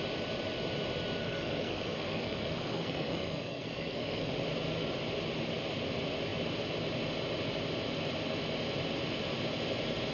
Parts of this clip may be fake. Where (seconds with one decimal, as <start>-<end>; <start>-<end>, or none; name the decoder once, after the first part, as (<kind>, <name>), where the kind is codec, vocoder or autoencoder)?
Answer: 1.2-4.3 (codec, SNAC)

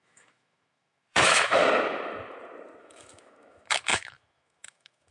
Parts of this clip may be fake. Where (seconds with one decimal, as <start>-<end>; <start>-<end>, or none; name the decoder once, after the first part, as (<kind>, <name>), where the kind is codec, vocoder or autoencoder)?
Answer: 0.0-1.6 (autoencoder, DAC-VAE); 2.8-5.1

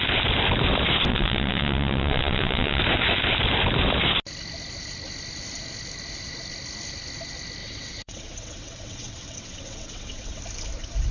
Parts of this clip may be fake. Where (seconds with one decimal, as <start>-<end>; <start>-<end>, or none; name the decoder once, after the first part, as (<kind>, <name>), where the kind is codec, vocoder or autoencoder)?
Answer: 1.1-2.8 (vocoder, WaveNeXt); 7.6-10.4

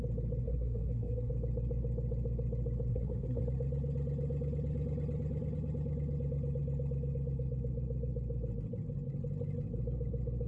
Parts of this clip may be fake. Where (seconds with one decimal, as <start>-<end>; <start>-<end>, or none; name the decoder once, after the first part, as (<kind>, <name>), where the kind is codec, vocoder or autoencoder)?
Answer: 0.4-1.3 (codec, SNAC); 2.9-3.4

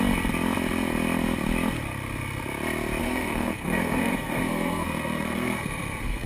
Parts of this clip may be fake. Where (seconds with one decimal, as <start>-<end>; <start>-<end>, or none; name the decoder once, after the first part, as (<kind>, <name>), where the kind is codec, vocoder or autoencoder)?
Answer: 3.0-6.3 (codec, SNAC)

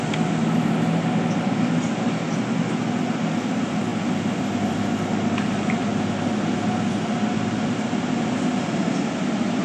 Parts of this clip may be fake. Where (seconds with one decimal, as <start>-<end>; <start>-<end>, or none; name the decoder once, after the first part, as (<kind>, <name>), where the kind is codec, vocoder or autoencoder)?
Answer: none

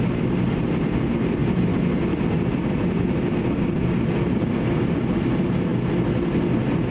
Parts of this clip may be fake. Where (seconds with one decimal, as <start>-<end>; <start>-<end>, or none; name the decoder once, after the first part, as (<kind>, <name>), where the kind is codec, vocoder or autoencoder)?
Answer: none